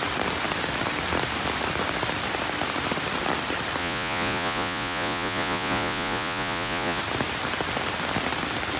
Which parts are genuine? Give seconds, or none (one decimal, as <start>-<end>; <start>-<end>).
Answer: 0.0-3.8; 7.0-8.8